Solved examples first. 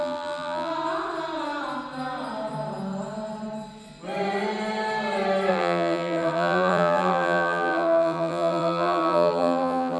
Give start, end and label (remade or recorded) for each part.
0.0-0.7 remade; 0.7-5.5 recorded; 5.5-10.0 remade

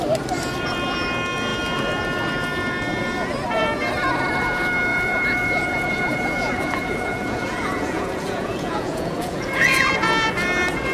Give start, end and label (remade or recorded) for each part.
0.0-4.9 recorded; 4.9-10.1 remade; 10.1-10.9 recorded

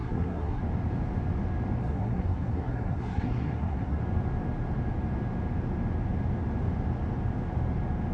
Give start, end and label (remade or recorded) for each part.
0.0-0.6 remade; 0.6-1.8 recorded; 1.8-4.0 remade; 4.0-8.1 recorded

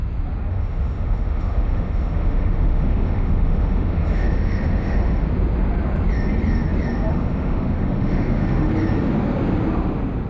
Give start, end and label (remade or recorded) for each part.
0.0-0.5 recorded; 0.5-5.2 remade; 5.2-7.1 recorded; 7.1-8.7 remade; 8.7-10.3 recorded

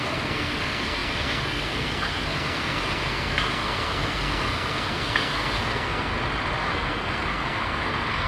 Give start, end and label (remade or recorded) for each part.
0.0-6.1 remade; 6.1-6.6 recorded; 6.6-8.3 remade

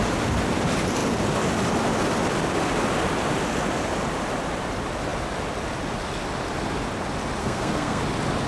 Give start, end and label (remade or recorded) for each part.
0.0-7.4 recorded; 7.4-8.0 remade; 8.0-8.5 recorded